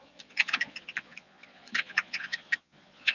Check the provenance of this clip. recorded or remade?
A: remade